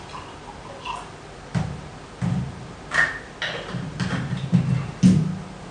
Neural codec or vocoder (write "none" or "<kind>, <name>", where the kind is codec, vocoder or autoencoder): none